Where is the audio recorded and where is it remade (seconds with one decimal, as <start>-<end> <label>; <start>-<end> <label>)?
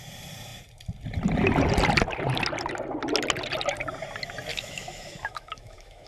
0.0-4.5 recorded; 4.5-6.1 remade